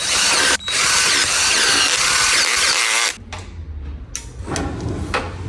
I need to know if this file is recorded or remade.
recorded